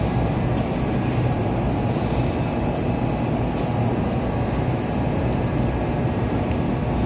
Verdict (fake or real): real